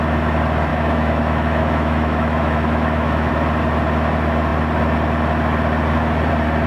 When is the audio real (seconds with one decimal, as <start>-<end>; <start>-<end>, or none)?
0.0-0.7; 3.3-6.7